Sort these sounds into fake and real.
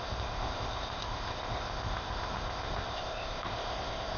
fake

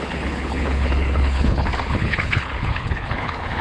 fake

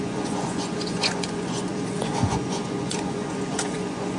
fake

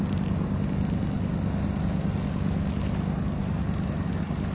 real